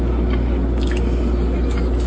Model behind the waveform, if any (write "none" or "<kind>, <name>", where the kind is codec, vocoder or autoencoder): none